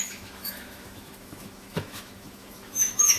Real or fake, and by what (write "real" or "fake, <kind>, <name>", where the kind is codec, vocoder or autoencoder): fake, autoencoder, DAC-VAE